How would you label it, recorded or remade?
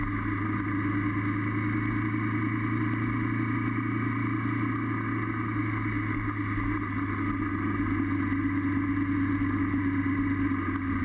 recorded